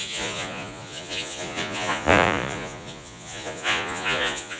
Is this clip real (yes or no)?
no